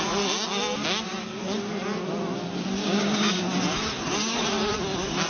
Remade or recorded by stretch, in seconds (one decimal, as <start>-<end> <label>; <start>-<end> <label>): 0.0-2.8 recorded; 2.8-3.4 remade; 3.4-5.3 recorded